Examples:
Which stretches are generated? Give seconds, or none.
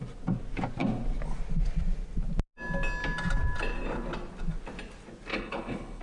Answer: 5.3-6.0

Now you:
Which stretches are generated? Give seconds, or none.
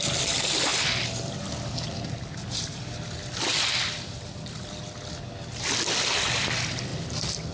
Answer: none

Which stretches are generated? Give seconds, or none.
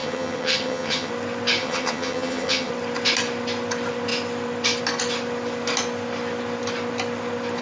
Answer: 0.0-1.1; 1.6-2.7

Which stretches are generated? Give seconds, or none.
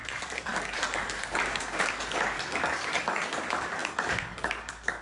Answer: 0.0-5.0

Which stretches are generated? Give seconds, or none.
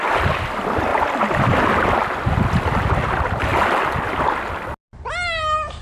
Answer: 0.9-2.6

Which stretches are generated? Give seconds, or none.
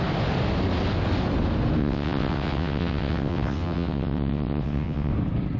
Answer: 1.8-5.1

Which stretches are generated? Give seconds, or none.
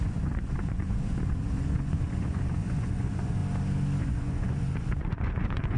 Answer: 0.0-3.4; 4.0-5.8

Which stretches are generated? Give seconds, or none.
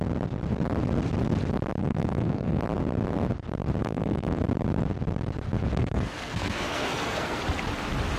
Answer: 1.8-2.6; 3.8-4.4; 5.6-7.4